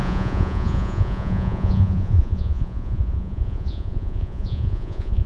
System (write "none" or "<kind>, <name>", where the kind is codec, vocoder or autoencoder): vocoder, Vocos